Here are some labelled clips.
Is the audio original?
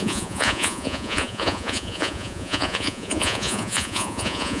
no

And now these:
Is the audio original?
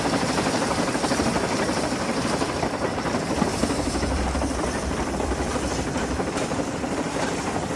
no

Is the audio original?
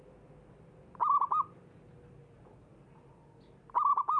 yes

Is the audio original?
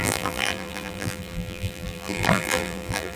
no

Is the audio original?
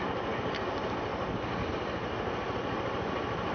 yes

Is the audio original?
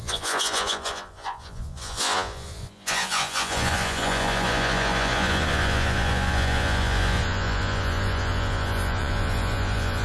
no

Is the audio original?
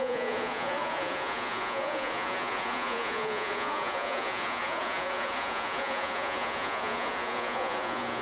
no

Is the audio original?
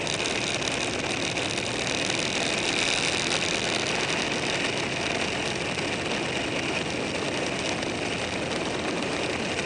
yes